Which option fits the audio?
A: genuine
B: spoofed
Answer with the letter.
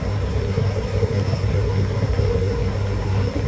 B